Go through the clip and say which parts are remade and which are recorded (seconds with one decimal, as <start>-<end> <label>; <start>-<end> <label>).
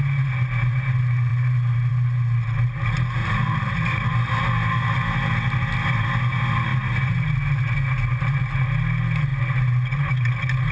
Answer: 0.0-3.2 recorded; 3.2-4.4 remade; 4.4-10.7 recorded